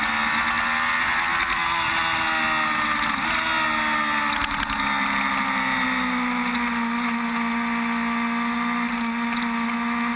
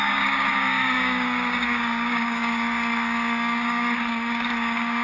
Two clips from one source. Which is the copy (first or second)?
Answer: second